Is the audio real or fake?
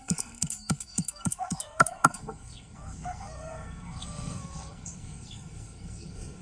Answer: fake